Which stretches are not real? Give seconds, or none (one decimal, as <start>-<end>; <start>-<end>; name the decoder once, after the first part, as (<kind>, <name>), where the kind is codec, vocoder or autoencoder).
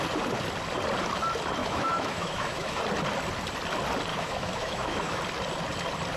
1.6-2.8 (autoencoder, DAC-VAE); 4.1-5.2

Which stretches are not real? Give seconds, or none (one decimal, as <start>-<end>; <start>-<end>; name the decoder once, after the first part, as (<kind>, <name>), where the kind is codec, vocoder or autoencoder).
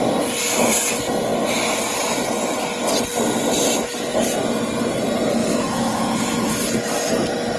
5.4-6.2 (autoencoder, DAC-VAE)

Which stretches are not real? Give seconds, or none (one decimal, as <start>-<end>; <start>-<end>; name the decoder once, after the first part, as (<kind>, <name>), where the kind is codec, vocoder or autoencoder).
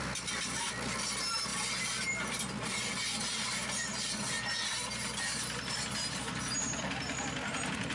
none